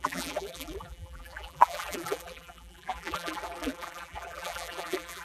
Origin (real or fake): fake